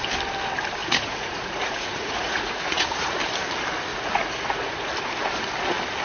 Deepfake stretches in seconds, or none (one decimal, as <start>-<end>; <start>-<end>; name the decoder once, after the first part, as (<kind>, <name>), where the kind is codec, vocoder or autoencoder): 0.8-3.2 (vocoder, Vocos); 3.9-4.9